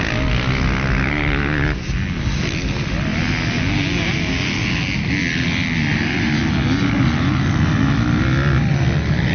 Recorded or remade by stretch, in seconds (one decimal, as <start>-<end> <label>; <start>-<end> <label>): 0.0-9.3 recorded